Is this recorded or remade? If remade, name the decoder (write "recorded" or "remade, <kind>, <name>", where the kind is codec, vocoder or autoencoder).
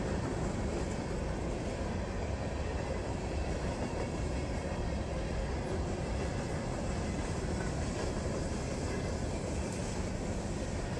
remade, vocoder, BigVGAN v2